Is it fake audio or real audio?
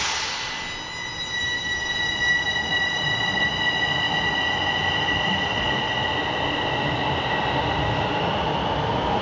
real